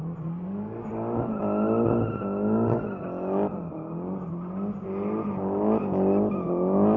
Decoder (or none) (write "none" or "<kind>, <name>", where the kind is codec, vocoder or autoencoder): none